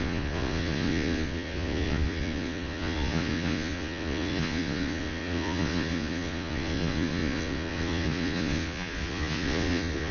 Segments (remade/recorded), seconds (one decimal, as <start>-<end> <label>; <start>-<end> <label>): 0.0-10.1 remade